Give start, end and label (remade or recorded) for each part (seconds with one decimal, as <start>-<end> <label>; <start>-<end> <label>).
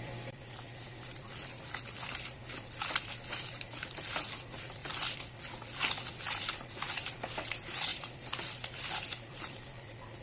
0.0-4.8 remade; 4.8-6.1 recorded; 6.1-10.2 remade